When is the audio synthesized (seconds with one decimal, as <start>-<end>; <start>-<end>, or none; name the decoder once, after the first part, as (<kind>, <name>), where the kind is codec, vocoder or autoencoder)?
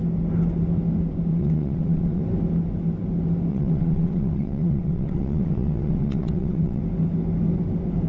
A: 1.3-2.2 (vocoder, WaveNeXt); 3.5-6.8